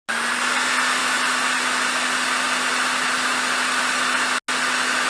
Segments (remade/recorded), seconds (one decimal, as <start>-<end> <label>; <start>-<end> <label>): 0.0-5.1 recorded